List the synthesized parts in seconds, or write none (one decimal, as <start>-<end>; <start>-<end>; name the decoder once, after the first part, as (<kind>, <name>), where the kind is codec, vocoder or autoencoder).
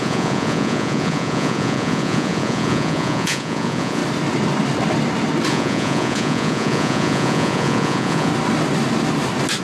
0.0-4.0 (vocoder, Vocos); 5.5-8.3